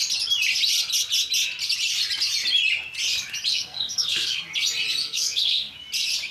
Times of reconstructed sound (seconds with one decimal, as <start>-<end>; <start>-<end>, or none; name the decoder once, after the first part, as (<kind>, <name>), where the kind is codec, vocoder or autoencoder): 3.5-4.4 (codec, SNAC); 5.0-5.7